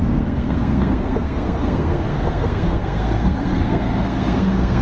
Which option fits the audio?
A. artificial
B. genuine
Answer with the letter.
A